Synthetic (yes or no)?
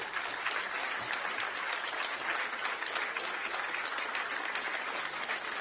no